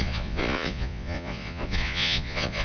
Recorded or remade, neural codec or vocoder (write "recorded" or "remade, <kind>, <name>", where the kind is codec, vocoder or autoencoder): remade, vocoder, Vocos